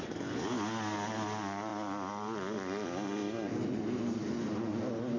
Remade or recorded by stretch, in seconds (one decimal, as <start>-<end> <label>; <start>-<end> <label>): 0.0-5.2 recorded